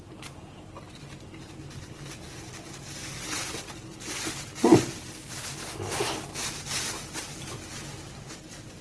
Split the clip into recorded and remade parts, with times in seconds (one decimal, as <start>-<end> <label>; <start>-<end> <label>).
0.0-8.8 recorded

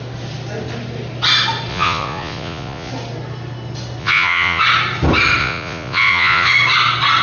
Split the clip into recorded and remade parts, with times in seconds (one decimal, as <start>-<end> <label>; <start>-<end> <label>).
0.0-1.7 recorded; 1.7-2.9 remade; 2.9-4.0 recorded; 4.0-4.6 remade; 4.6-5.4 recorded; 5.4-6.5 remade; 6.5-7.2 recorded

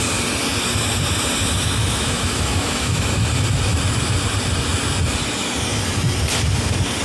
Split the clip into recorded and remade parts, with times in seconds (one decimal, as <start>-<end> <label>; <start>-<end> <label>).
0.0-1.8 recorded; 1.8-3.0 remade; 3.0-7.0 recorded

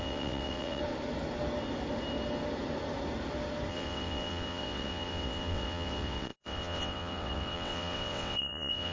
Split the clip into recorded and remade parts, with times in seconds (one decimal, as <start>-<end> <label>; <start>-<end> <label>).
0.0-0.8 remade; 0.8-3.7 recorded; 3.7-8.9 remade